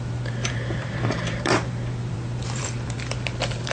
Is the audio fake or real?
fake